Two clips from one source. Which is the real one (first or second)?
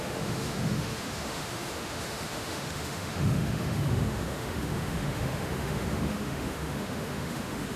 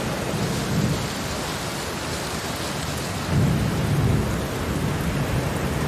second